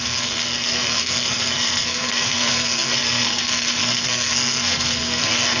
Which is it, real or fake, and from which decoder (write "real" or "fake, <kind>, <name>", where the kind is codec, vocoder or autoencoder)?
fake, codec, SNAC